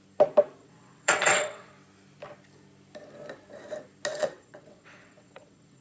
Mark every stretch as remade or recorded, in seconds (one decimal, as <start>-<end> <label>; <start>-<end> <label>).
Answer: 0.0-0.6 recorded; 0.6-1.7 remade; 1.7-4.1 recorded; 4.1-5.8 remade